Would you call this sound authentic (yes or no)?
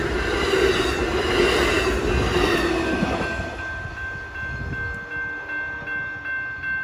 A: yes